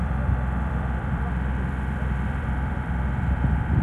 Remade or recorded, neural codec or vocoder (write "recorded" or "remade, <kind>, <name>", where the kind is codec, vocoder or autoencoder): remade, vocoder, BigVGAN v2